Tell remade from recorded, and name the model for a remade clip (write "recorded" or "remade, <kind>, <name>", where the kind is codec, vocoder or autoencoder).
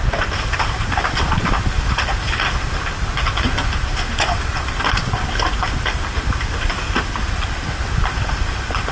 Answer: recorded